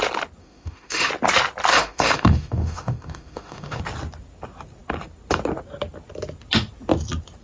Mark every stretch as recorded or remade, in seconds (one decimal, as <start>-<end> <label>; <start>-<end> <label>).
0.0-0.4 recorded; 0.4-1.1 remade; 1.1-1.7 recorded; 1.7-3.8 remade; 3.8-7.4 recorded